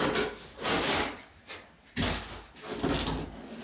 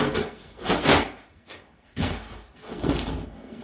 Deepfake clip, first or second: second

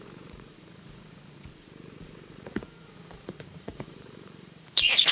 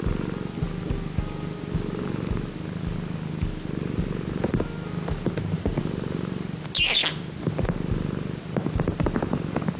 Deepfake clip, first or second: first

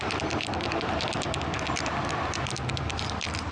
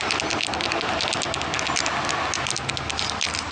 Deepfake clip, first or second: first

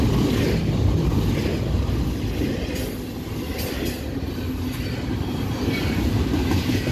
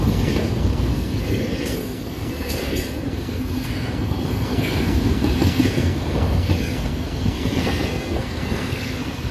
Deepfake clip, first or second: second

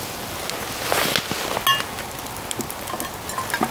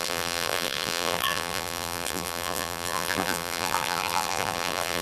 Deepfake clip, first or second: second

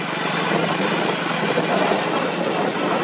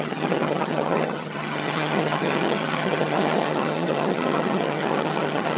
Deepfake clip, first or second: second